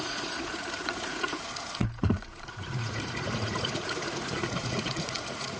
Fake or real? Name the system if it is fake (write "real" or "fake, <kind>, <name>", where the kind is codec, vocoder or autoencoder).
fake, vocoder, Vocos